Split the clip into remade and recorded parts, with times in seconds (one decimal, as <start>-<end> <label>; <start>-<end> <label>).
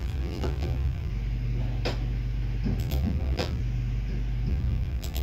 0.0-1.1 remade; 1.1-2.8 recorded; 2.8-3.6 remade; 3.6-4.5 recorded; 4.5-5.2 remade